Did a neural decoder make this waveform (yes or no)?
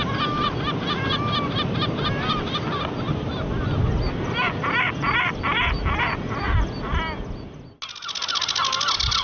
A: no